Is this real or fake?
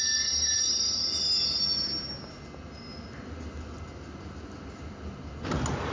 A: real